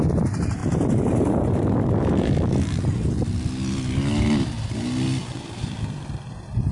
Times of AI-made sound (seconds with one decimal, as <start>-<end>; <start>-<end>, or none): none